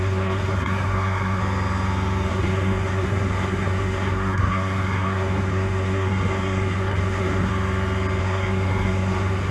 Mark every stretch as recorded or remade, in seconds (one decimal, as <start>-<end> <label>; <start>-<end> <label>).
0.0-1.4 remade; 1.4-2.3 recorded; 2.3-7.5 remade; 7.5-8.2 recorded; 8.2-9.5 remade